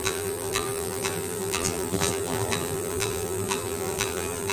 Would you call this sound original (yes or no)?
no